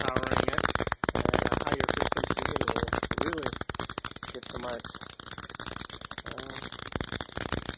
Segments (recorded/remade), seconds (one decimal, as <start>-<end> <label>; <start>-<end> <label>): 0.0-7.8 recorded